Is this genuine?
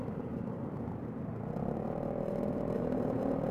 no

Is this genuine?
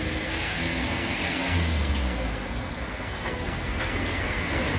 no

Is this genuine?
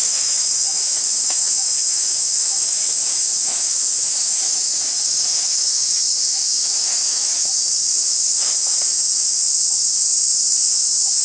no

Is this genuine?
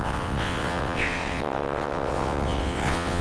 no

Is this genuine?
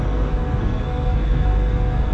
no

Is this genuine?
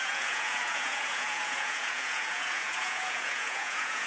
no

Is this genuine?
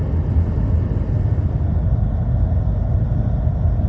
yes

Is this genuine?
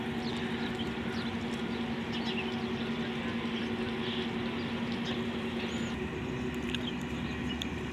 yes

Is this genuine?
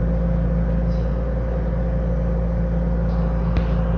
yes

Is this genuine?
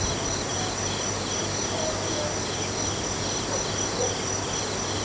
yes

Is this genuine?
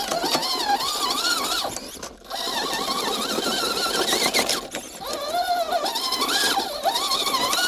yes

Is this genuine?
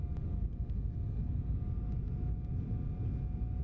yes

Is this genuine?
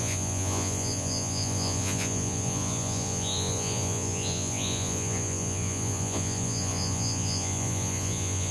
no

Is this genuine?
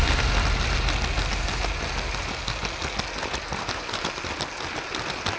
yes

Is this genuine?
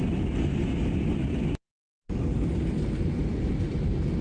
yes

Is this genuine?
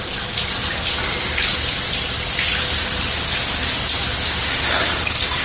yes